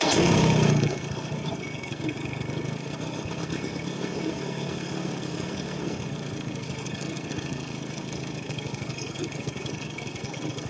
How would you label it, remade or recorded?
remade